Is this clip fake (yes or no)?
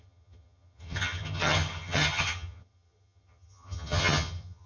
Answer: yes